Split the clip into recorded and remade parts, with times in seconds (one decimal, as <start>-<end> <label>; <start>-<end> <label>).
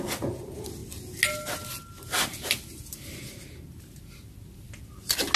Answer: 0.0-5.4 recorded